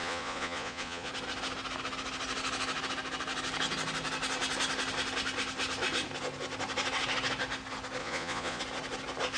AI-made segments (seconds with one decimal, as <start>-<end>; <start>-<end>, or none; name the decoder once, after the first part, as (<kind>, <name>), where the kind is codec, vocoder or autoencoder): 0.0-1.1 (vocoder, Vocos); 8.0-8.6